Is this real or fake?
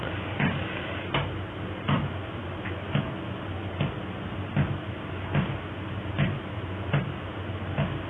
real